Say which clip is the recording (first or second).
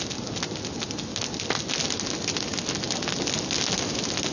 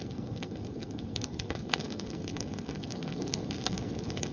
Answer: first